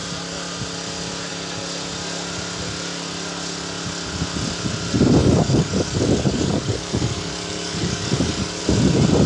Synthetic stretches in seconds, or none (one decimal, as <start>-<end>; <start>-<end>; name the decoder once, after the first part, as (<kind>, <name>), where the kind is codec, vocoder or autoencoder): 5.2-8.6 (codec, DAC)